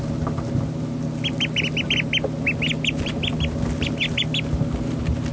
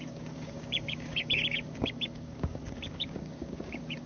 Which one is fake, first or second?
second